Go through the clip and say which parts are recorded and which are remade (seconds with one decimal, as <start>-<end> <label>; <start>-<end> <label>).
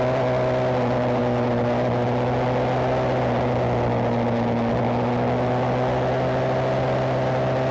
0.0-7.7 recorded